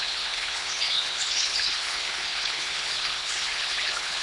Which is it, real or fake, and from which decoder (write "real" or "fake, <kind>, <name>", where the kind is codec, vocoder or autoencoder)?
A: fake, codec, HILCodec